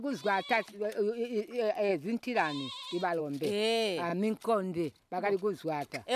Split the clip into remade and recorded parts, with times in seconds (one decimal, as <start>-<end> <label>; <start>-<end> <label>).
0.0-6.2 recorded